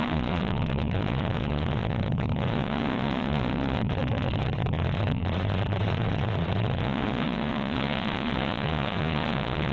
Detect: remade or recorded remade